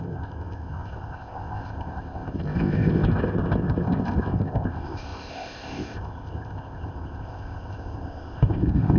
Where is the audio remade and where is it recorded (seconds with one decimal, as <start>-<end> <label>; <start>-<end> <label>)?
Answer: 0.0-9.0 remade